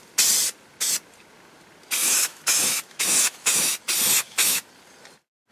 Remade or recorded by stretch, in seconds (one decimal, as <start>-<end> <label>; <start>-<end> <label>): 0.0-2.0 recorded; 2.0-3.7 remade; 3.7-4.2 recorded; 4.2-4.7 remade; 4.7-5.5 recorded